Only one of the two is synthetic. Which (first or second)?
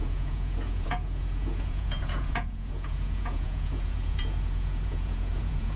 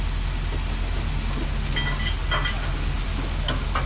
first